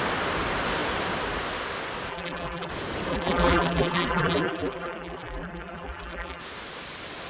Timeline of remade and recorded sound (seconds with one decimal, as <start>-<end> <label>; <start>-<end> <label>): 0.0-2.1 recorded; 2.1-2.7 remade; 2.7-3.1 recorded; 3.1-6.4 remade; 6.4-7.3 recorded